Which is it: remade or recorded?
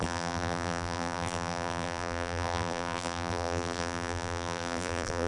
remade